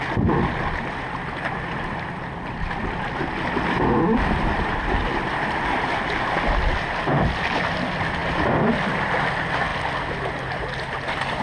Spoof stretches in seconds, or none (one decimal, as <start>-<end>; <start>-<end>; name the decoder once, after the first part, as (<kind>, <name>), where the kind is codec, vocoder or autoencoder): none